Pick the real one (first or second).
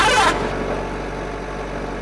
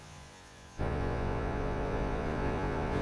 first